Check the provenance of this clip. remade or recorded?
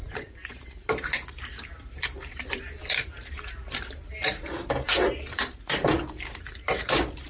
remade